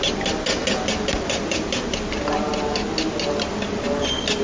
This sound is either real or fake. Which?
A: real